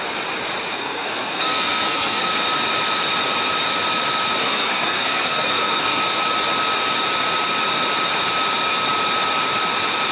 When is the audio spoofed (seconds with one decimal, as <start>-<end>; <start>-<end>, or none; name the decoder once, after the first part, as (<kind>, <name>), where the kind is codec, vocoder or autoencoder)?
0.7-2.3 (codec, SNAC); 4.4-6.0